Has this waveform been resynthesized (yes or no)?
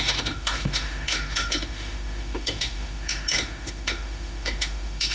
yes